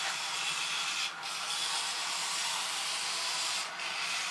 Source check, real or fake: fake